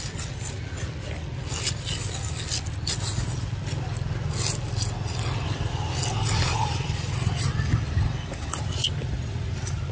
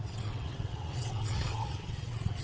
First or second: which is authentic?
first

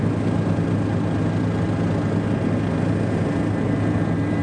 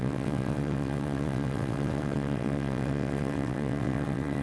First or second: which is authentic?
first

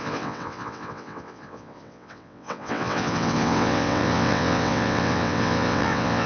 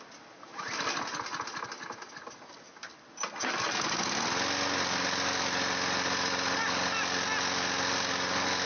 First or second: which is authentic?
second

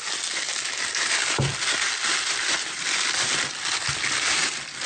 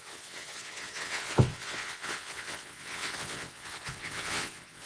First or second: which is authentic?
first